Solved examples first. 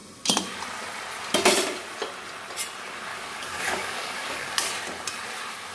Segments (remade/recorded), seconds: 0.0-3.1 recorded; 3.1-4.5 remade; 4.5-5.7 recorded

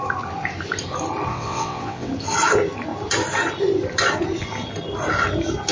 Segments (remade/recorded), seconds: 0.0-1.3 recorded; 1.3-2.1 remade; 2.1-5.7 recorded